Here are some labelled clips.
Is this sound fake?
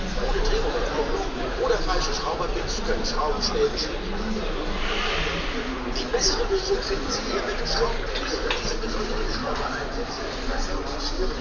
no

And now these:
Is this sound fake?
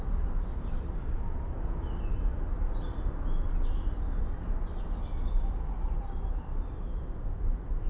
no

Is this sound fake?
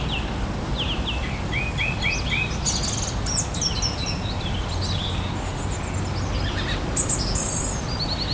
no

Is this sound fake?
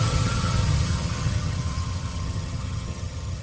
yes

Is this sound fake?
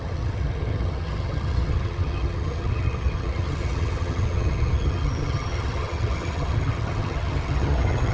yes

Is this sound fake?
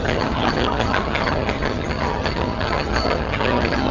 yes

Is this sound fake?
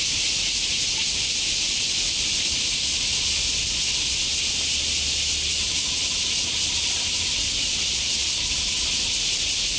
no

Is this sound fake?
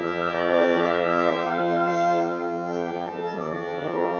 yes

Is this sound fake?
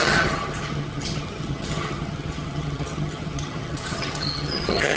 yes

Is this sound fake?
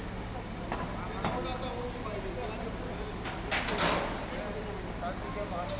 no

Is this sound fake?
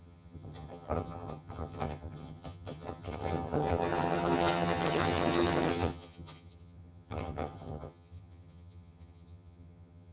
yes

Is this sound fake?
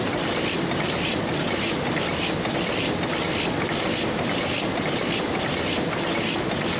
no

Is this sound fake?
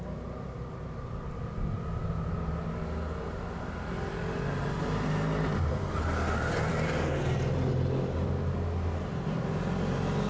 no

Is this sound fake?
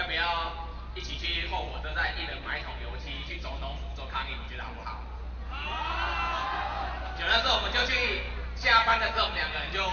no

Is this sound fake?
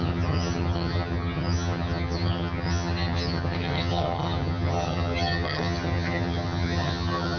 yes